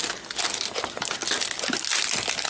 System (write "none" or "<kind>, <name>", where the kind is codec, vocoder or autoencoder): none